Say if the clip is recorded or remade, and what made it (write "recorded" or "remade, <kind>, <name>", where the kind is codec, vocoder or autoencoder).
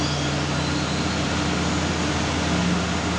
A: recorded